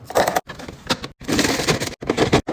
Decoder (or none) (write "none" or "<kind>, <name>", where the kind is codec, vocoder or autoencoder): none